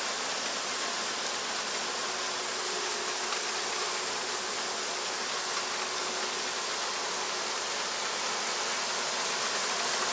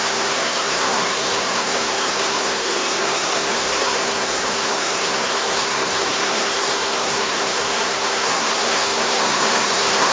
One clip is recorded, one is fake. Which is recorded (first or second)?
first